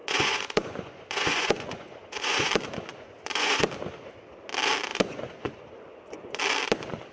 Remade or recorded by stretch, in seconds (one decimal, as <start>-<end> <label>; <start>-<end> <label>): 0.0-2.5 remade; 2.5-2.9 recorded; 2.9-3.6 remade; 3.6-4.9 recorded; 4.9-6.4 remade; 6.4-7.1 recorded